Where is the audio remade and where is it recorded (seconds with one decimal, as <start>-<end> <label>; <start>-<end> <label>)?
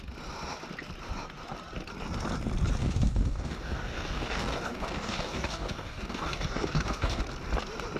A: 0.0-2.8 recorded; 2.8-7.2 remade; 7.2-8.0 recorded